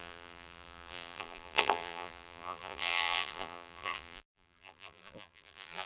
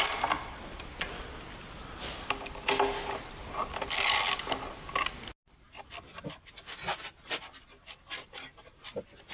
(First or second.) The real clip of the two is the second